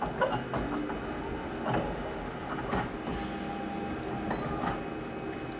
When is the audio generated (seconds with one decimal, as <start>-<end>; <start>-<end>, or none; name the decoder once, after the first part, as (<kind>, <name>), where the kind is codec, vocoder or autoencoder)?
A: none